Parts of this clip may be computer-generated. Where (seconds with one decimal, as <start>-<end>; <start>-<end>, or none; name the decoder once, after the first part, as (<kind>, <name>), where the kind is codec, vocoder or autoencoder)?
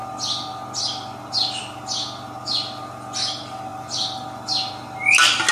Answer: none